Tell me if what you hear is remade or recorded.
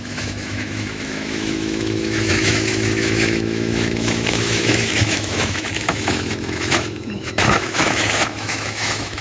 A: remade